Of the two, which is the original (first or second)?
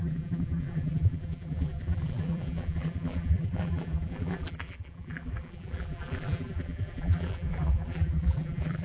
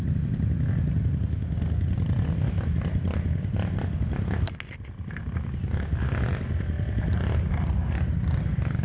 second